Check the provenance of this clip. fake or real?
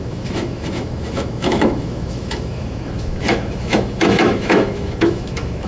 fake